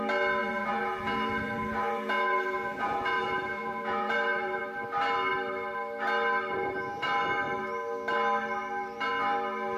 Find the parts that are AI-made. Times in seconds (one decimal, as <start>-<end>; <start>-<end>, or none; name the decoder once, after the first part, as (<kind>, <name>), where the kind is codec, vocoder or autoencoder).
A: 0.4-4.6 (vocoder, Vocos)